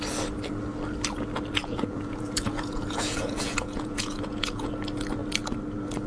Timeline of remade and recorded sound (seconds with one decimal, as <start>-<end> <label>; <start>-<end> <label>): 0.0-1.6 recorded; 1.6-4.7 remade; 4.7-6.1 recorded